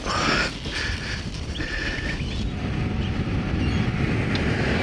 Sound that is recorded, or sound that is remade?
recorded